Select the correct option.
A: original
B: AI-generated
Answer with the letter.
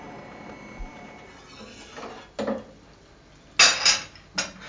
A